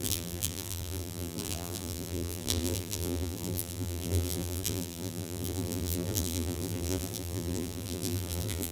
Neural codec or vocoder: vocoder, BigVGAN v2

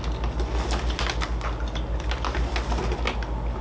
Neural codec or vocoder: none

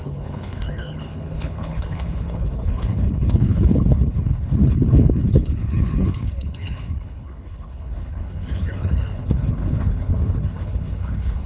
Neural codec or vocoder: codec, HILCodec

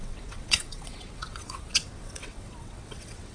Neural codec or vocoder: vocoder, WaveNeXt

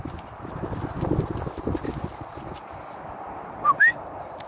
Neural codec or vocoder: none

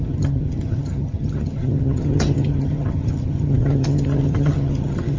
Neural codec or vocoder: vocoder, HiFi-GAN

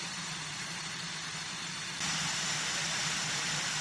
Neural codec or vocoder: none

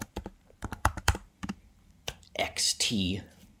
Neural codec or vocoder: vocoder, BigVGAN v2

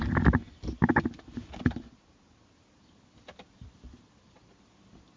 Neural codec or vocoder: none